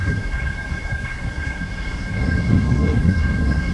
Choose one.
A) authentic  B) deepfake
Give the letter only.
B